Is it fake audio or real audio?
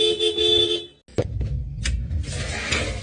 real